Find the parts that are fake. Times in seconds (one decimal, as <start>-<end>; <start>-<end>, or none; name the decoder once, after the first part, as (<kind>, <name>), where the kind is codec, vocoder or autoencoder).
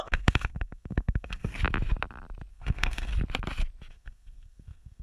0.0-1.5 (codec, SNAC); 2.5-3.1; 3.9-5.0